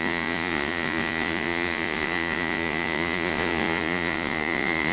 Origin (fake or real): fake